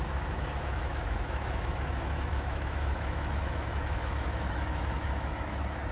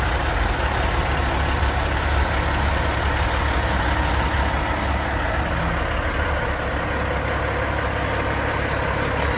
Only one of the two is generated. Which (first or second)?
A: first